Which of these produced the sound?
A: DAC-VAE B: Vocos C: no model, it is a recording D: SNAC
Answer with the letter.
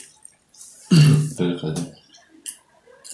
C